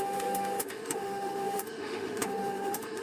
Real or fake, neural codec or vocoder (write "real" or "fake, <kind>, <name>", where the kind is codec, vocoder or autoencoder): fake, autoencoder, DAC-VAE